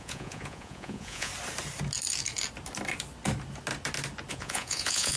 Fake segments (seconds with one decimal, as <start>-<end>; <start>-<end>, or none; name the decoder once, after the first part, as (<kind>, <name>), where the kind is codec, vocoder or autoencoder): 0.0-1.3 (vocoder, Vocos); 4.3-5.2